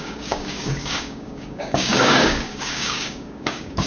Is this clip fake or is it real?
fake